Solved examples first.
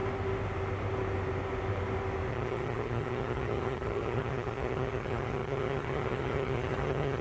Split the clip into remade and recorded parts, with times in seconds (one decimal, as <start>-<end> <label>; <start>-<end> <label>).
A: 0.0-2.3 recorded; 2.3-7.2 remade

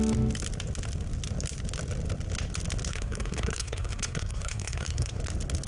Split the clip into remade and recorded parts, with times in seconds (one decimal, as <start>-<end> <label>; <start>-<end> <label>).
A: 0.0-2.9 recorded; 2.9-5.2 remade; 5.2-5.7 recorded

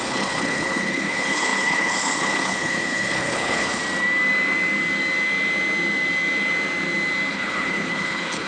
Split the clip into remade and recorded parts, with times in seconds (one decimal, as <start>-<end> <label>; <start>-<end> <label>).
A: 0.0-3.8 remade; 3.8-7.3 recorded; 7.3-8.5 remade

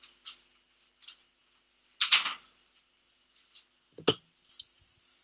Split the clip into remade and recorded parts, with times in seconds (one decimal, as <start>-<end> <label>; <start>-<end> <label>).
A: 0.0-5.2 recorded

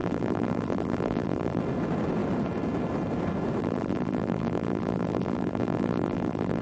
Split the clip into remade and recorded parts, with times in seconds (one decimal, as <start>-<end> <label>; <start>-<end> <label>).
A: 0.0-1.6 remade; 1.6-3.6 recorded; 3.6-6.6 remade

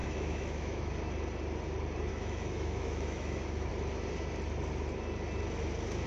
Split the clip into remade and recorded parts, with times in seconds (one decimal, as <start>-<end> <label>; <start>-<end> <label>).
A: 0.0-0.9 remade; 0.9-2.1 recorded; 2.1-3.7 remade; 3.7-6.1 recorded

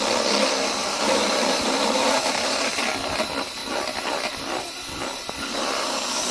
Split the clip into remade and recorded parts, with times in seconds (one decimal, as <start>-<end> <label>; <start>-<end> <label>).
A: 0.0-0.8 recorded; 0.8-2.8 remade; 2.8-6.3 recorded

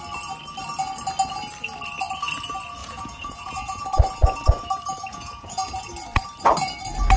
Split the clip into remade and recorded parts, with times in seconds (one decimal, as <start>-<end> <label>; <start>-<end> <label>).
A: 0.0-2.8 recorded; 2.8-3.8 remade; 3.8-5.1 recorded; 5.1-5.9 remade; 5.9-7.2 recorded